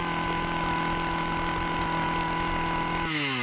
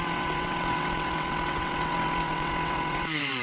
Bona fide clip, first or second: first